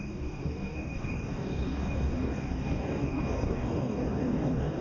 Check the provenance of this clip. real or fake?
fake